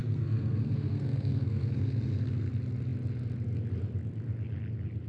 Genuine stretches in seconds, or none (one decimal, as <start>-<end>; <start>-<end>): 2.5-5.1

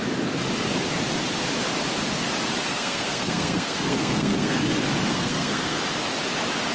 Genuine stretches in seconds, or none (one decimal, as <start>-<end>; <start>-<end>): 0.0-2.7; 4.6-5.0; 5.8-6.7